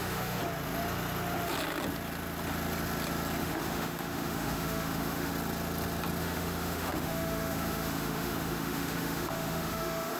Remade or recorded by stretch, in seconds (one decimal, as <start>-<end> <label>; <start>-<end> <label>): 0.0-0.4 remade; 0.4-3.4 recorded; 3.4-5.3 remade; 5.3-6.2 recorded; 6.2-10.2 remade